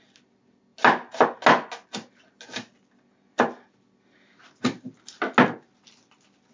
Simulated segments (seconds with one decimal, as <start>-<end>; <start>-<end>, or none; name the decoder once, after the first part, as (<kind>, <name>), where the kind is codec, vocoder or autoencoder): none